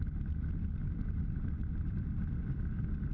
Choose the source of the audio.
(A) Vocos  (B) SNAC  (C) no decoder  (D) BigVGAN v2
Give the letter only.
D